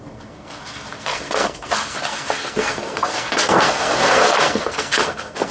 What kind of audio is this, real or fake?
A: fake